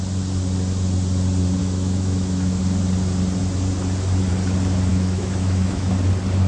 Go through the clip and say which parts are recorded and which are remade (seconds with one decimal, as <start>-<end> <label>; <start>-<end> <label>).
0.0-1.6 recorded; 1.6-2.6 remade; 2.6-4.9 recorded; 4.9-5.9 remade; 5.9-6.5 recorded